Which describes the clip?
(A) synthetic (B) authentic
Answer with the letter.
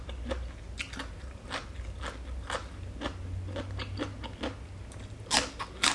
B